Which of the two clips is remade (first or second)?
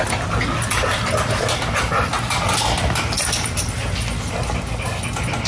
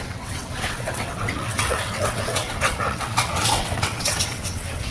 second